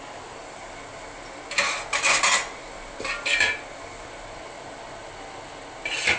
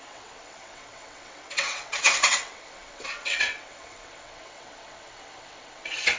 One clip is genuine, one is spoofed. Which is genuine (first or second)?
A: first